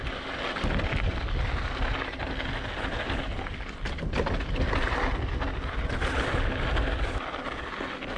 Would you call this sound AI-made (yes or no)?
no